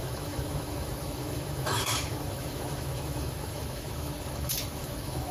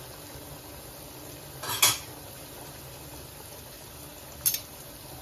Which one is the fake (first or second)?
first